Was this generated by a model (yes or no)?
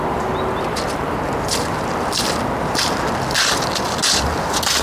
no